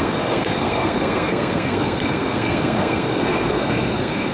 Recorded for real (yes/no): no